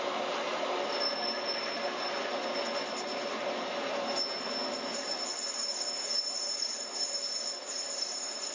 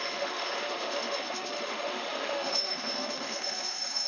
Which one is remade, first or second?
second